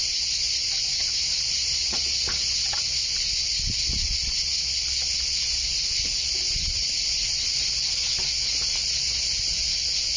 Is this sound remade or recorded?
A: recorded